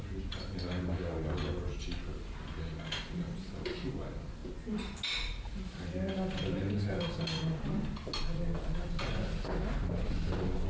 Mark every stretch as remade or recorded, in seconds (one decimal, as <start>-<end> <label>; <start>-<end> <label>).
0.0-10.7 recorded